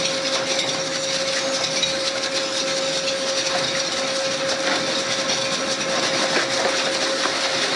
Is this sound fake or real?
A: real